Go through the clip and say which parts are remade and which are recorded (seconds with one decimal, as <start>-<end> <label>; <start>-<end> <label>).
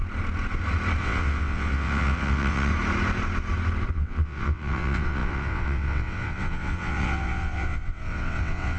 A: 0.0-1.0 recorded; 1.0-2.7 remade; 2.7-3.9 recorded; 3.9-8.8 remade